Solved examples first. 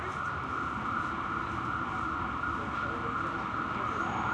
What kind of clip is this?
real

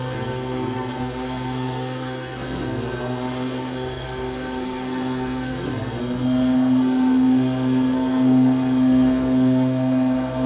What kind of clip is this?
fake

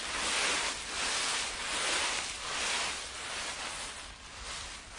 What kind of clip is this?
real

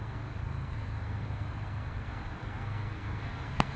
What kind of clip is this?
fake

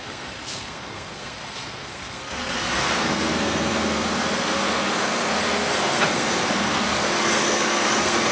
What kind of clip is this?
fake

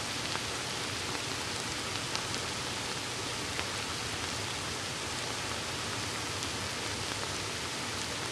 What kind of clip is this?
real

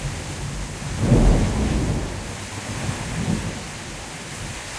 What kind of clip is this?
real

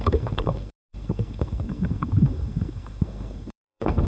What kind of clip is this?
fake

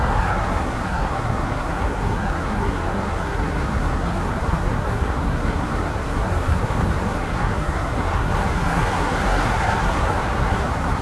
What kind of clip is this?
fake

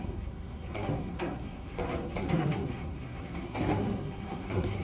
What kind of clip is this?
fake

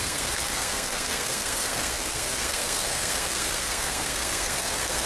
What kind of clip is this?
fake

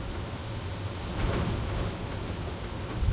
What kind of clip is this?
real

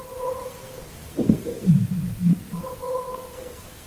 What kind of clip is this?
fake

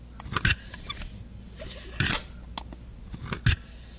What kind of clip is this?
real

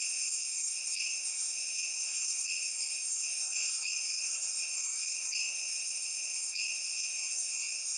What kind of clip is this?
fake